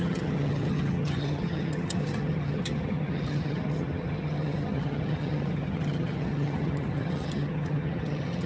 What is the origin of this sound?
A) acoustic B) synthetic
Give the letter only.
B